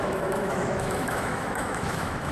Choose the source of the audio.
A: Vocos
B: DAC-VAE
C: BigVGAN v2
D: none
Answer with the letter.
B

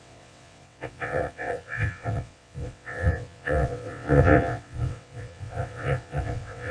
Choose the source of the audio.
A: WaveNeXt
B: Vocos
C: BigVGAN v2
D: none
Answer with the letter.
A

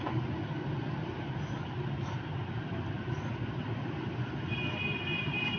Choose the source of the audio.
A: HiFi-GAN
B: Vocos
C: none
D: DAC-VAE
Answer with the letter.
C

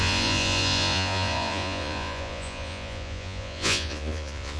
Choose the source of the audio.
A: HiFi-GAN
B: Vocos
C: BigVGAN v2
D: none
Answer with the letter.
B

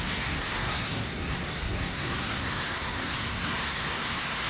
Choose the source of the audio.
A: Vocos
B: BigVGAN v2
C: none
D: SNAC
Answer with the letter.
D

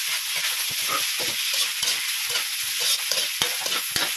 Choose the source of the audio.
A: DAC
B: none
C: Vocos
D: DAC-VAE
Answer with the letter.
C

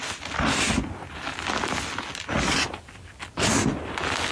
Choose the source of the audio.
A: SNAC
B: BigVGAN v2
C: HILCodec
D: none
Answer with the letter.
D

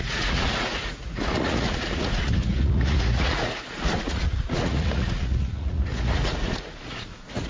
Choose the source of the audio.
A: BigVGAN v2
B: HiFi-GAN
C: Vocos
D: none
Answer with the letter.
C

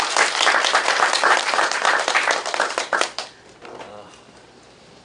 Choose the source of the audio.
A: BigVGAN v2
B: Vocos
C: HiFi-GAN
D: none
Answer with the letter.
A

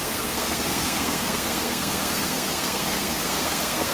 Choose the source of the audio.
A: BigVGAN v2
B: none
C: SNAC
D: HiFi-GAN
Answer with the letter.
C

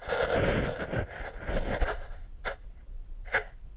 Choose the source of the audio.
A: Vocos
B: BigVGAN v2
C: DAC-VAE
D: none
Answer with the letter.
D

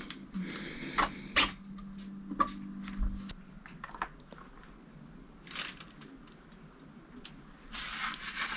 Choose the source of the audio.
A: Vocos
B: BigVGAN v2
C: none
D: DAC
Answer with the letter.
C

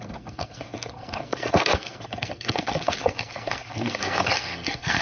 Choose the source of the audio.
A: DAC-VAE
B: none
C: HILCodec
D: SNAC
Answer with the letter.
D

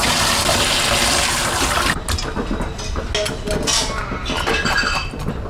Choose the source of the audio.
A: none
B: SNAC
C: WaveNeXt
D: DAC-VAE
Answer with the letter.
A